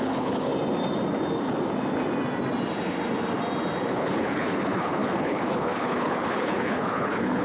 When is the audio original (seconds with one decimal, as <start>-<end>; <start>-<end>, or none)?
0.5-3.9